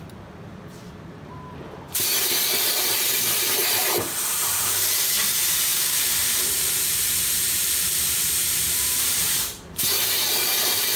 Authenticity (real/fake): fake